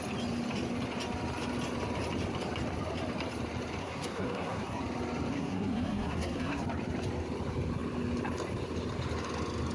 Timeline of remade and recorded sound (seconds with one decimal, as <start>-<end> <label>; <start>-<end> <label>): 0.0-3.8 recorded; 3.8-4.8 remade; 4.8-5.3 recorded; 5.3-6.6 remade; 6.6-9.7 recorded